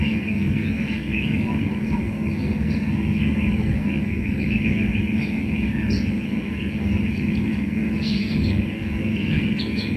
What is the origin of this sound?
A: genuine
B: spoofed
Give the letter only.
B